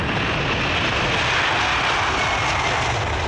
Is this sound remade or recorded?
recorded